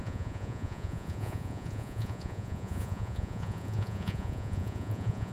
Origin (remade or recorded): remade